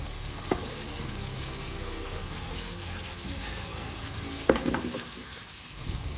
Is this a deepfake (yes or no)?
yes